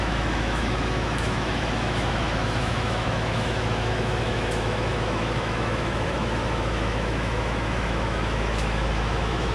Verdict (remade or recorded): remade